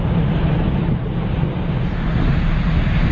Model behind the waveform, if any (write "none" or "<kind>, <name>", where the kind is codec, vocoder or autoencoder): none